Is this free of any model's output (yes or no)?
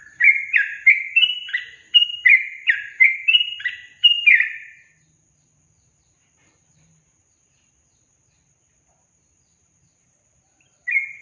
no